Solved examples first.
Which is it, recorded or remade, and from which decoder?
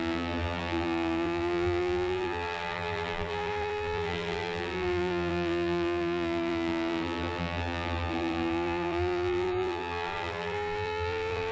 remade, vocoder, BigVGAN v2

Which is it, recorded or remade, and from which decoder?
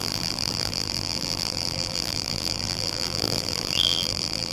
remade, vocoder, BigVGAN v2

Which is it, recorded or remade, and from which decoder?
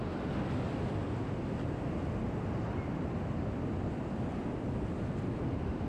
recorded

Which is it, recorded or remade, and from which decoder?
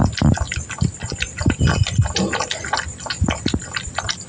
recorded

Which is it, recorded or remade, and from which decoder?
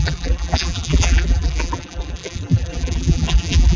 remade, vocoder, BigVGAN v2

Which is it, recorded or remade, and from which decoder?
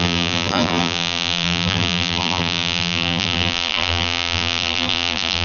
remade, vocoder, BigVGAN v2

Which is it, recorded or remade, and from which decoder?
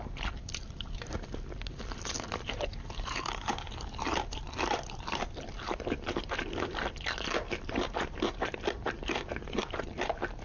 remade, vocoder, BigVGAN v2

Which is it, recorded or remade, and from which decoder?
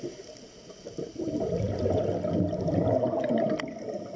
recorded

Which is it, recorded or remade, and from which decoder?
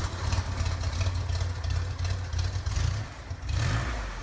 recorded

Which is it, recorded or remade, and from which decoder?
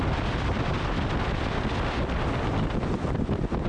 recorded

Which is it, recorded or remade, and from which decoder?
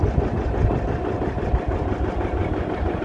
recorded